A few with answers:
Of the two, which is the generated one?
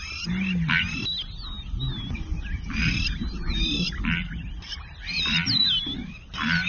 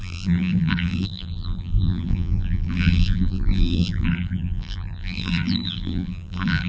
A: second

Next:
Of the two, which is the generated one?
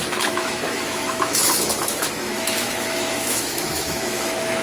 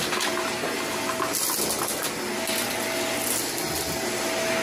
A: first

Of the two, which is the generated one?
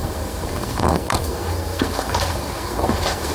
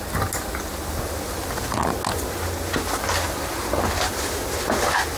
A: first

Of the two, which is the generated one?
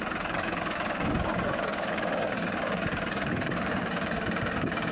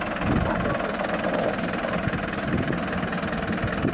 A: first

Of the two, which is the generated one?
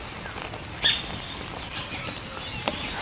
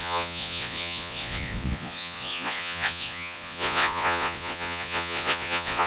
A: second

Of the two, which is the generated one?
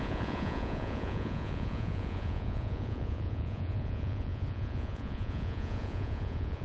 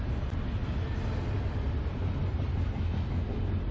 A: first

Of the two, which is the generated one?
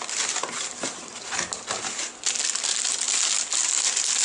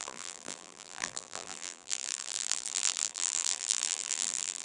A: second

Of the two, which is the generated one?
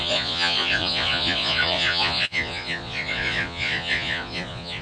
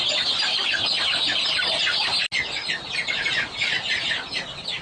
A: first